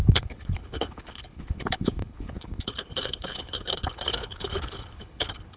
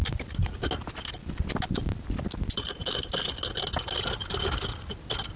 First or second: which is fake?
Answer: first